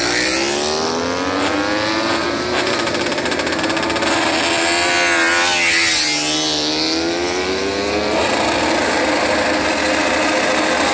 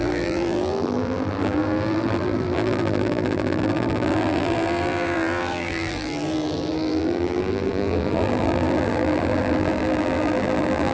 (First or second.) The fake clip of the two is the second